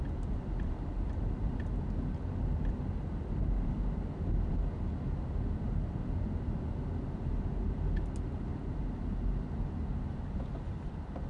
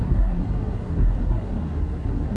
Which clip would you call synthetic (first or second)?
second